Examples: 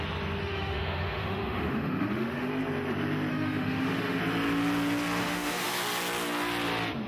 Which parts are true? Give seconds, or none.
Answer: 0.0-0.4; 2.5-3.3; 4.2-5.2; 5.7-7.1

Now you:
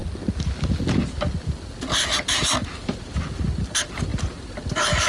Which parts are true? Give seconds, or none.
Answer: 0.0-5.1